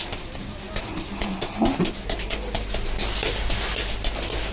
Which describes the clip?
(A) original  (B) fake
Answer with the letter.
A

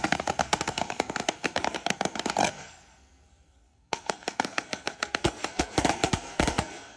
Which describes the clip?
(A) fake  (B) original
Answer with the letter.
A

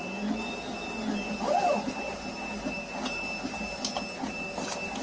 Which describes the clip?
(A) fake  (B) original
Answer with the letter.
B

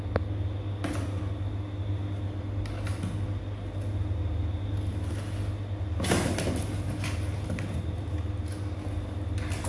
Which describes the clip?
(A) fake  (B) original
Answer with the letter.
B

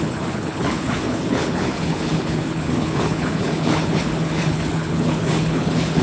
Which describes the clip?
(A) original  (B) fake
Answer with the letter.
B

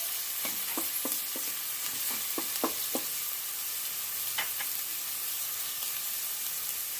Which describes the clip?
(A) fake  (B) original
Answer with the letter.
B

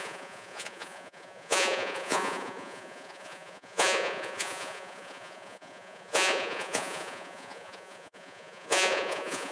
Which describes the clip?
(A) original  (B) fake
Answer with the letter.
B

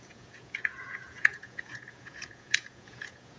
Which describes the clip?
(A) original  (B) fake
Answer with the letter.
B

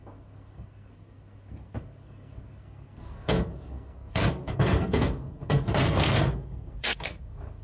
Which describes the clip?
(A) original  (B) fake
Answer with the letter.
B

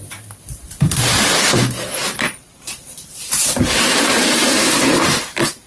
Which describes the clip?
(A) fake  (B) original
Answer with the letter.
A